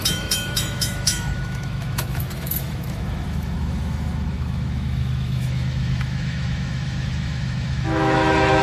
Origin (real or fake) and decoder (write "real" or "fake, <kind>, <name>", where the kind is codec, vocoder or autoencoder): fake, autoencoder, DAC-VAE